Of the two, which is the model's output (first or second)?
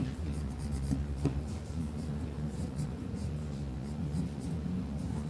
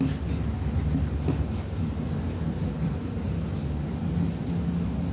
first